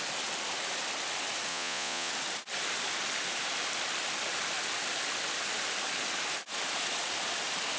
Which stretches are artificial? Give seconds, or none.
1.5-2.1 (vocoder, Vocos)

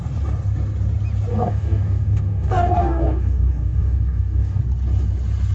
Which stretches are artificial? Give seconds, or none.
1.3-4.6 (codec, DAC)

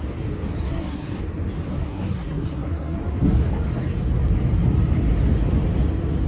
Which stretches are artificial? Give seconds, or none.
0.7-1.2 (codec, SNAC); 1.7-3.0

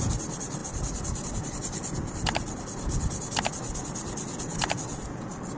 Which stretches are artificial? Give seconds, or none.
none

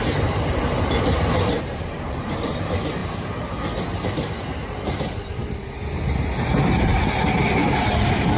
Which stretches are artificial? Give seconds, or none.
none